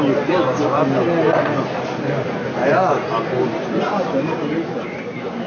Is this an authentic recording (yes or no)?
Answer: yes